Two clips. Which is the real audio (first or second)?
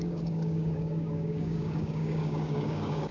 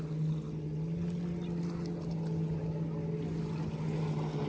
second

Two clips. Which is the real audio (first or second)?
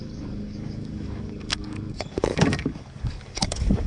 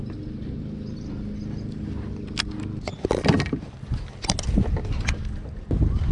second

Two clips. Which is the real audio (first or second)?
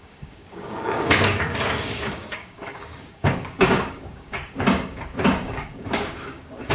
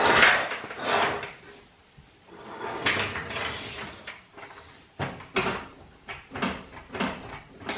second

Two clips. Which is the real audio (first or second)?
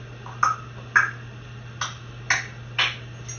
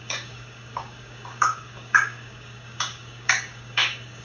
first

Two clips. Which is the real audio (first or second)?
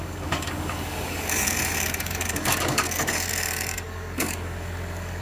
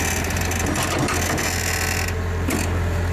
second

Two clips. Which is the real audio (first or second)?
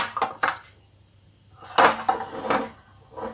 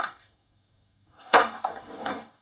first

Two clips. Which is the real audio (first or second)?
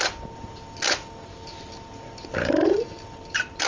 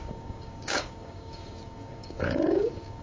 first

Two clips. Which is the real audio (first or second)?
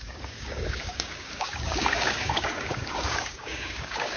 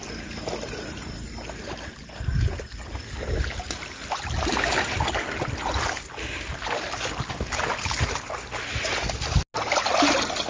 second